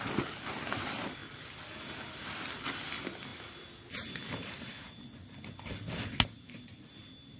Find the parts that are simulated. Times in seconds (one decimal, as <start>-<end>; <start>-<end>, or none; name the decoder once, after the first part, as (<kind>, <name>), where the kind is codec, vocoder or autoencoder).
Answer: none